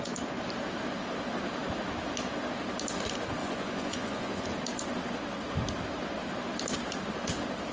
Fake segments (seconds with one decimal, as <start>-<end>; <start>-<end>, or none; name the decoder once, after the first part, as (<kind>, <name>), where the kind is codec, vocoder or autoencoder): 3.4-4.4 (vocoder, Vocos)